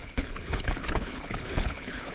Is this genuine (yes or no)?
no